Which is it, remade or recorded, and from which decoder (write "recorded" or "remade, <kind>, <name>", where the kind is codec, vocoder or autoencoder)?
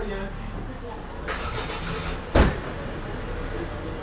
recorded